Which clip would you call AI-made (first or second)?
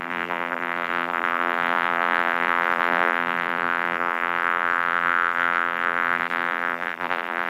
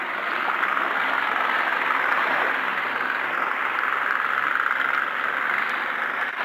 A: first